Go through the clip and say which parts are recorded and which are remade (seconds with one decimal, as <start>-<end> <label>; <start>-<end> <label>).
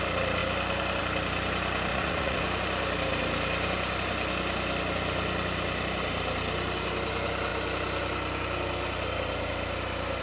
0.0-1.9 recorded; 1.9-2.4 remade; 2.4-10.2 recorded